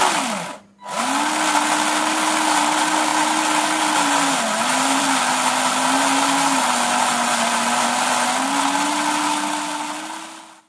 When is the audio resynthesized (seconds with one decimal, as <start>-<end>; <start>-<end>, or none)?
none